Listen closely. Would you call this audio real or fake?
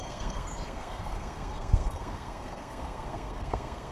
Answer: fake